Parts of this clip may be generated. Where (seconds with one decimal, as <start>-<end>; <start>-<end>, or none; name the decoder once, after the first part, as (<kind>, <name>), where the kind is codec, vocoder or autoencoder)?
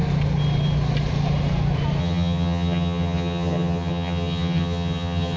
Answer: 2.0-5.4 (vocoder, HiFi-GAN)